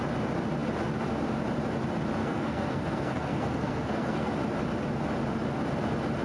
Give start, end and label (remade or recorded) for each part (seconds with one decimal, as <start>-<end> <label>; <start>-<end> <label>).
0.0-2.2 recorded; 2.2-4.3 remade; 4.3-6.2 recorded